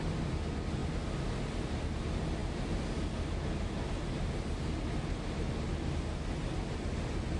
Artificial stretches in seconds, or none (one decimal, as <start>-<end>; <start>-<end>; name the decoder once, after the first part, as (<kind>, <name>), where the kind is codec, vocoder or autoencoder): none